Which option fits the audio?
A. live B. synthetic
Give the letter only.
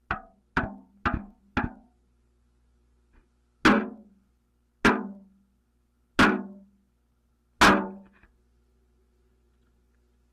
A